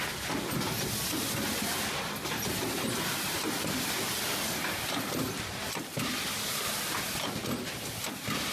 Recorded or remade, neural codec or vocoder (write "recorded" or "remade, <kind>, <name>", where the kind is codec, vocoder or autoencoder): recorded